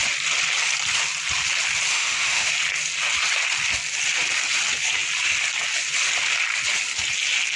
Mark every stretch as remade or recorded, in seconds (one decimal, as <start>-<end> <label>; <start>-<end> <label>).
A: 0.0-1.9 recorded; 1.9-2.5 remade; 2.5-7.6 recorded